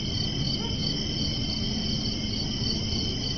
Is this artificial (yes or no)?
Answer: no